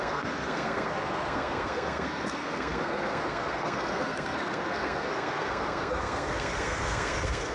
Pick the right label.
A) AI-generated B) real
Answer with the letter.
A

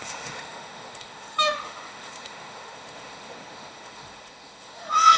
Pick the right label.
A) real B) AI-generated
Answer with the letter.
B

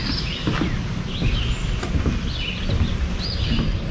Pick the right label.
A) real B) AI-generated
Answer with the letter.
A